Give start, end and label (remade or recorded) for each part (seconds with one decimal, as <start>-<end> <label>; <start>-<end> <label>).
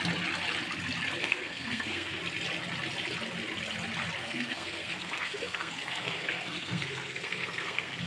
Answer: 0.0-1.2 recorded; 1.2-2.2 remade; 2.2-4.2 recorded; 4.2-8.1 remade